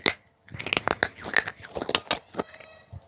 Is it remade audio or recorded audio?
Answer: recorded